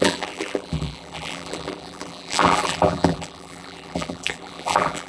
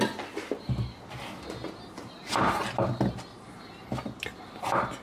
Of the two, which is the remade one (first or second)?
first